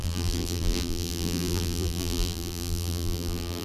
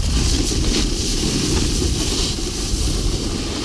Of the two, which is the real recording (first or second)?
second